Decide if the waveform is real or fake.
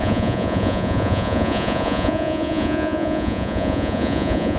fake